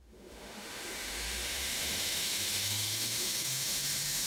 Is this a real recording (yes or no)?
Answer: no